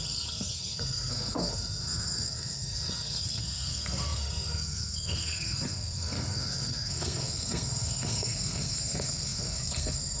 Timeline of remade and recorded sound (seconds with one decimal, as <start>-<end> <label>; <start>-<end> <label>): 0.0-10.2 remade